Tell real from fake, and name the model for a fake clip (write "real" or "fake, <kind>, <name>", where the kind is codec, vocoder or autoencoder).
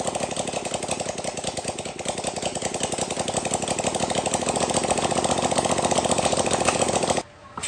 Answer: real